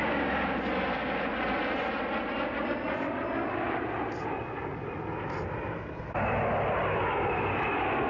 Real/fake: real